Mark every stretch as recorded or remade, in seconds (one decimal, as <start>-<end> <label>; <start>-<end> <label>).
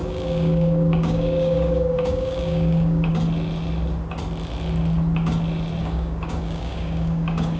0.0-3.1 remade; 3.1-5.8 recorded; 5.8-7.6 remade